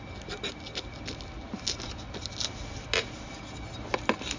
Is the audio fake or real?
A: real